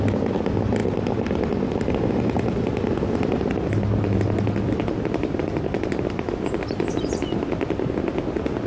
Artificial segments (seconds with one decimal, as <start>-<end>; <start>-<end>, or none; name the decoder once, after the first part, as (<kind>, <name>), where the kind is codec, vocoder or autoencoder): none